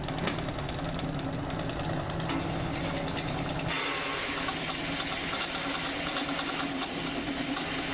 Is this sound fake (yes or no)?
no